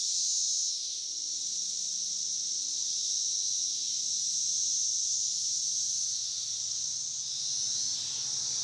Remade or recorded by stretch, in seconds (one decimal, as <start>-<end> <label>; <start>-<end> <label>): 0.0-8.6 recorded